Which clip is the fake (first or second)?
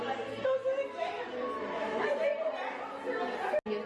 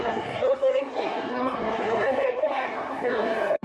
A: second